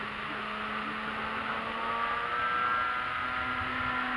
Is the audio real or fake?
real